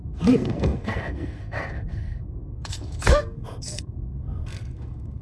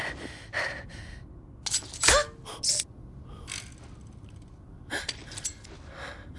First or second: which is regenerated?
first